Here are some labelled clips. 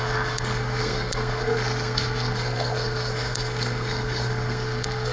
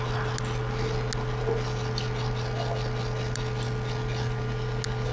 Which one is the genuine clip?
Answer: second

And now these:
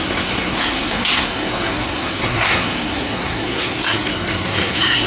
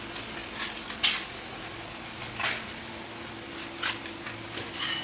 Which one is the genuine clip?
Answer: second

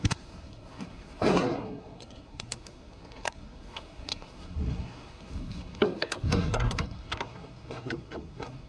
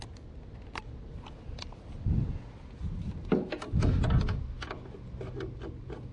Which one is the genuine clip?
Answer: second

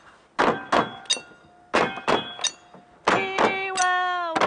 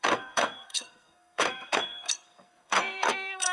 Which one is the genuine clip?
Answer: first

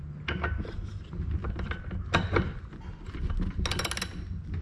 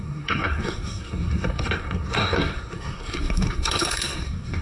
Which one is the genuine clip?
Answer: first